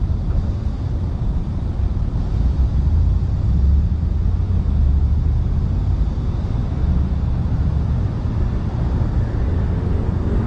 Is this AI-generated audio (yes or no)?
no